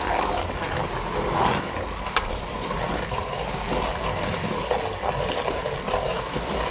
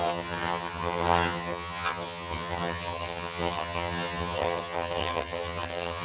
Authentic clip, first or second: first